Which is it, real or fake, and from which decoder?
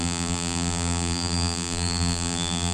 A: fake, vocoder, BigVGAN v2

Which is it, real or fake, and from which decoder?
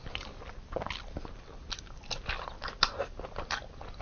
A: real